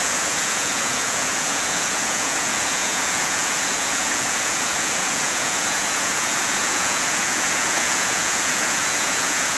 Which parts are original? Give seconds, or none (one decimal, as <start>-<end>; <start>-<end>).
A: none